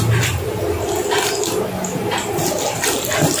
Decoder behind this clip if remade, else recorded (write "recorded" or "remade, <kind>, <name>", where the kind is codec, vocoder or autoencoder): recorded